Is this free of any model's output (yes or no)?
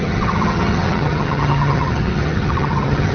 no